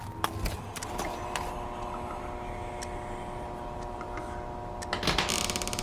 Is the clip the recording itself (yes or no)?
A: yes